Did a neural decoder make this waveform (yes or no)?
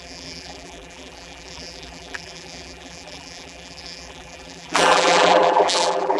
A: yes